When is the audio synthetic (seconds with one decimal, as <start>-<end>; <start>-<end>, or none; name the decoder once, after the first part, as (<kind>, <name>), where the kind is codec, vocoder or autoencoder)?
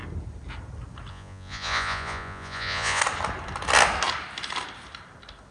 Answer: 1.1-3.0 (vocoder, Vocos)